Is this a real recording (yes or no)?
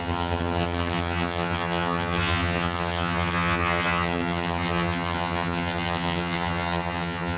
no